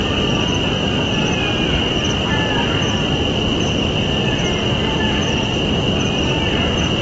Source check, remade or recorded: recorded